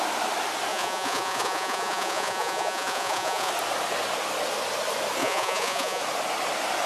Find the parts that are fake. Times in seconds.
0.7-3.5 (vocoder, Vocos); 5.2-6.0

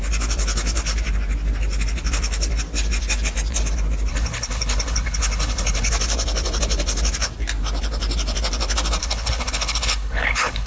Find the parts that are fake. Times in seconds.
4.1-5.9 (codec, HILCodec); 9.0-10.7

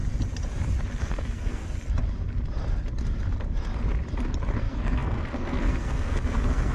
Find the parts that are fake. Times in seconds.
1.0-1.6 (codec, SNAC); 4.6-6.7

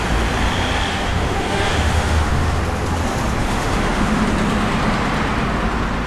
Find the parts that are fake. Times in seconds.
0.9-2.6 (autoencoder, DAC-VAE); 3.4-4.2